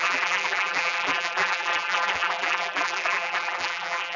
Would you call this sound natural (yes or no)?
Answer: no